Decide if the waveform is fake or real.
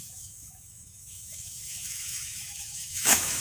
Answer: fake